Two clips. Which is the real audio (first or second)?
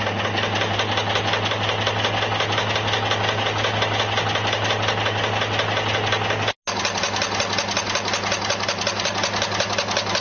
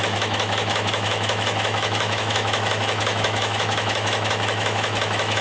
first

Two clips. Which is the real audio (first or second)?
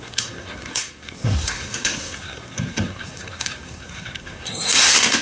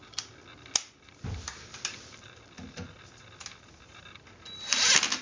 second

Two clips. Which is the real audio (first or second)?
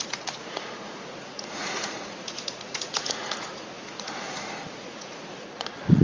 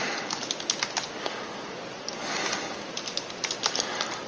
second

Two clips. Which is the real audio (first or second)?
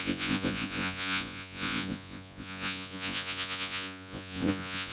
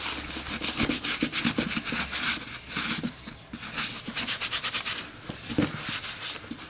second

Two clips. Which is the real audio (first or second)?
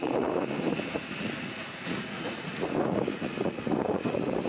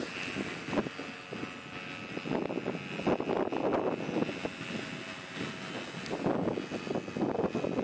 second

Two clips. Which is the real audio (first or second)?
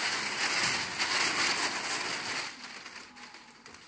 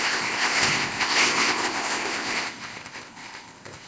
first